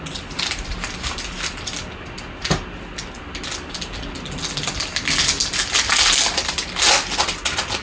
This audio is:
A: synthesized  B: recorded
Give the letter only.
B